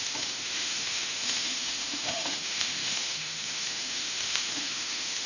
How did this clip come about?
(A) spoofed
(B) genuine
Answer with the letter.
A